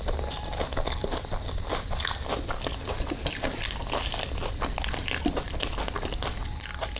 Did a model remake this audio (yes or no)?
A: no